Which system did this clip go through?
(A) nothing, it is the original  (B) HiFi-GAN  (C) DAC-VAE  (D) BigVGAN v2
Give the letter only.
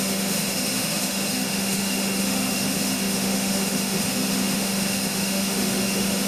C